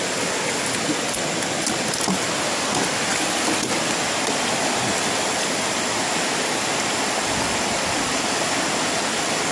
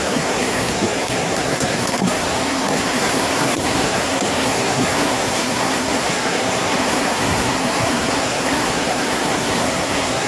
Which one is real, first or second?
first